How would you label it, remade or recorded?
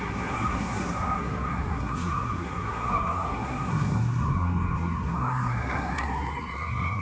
remade